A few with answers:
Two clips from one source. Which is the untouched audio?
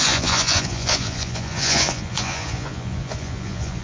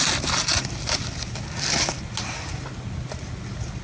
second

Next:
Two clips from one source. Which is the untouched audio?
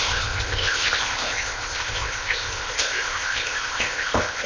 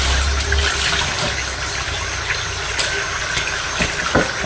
second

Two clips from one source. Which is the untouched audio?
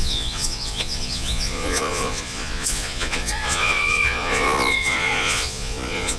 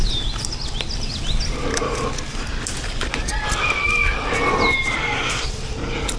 second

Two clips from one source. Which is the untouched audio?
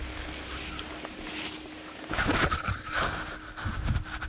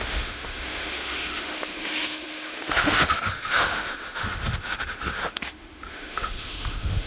first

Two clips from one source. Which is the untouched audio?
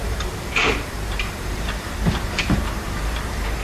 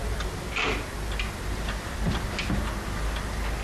second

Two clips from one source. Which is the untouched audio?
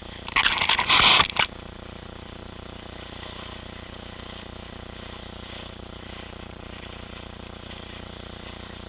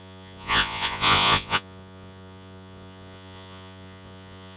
first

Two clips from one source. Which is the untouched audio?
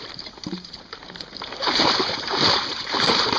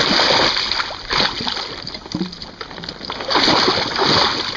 second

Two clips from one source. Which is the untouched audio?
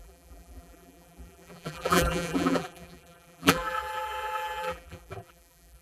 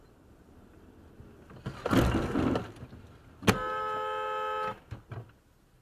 second